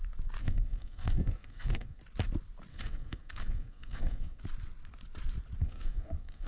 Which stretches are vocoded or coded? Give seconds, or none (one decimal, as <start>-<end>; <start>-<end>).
0.4-2.0; 2.7-4.4; 5.6-6.5